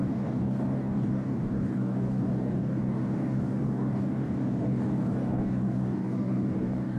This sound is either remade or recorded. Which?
remade